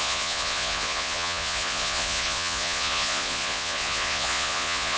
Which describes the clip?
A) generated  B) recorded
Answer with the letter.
A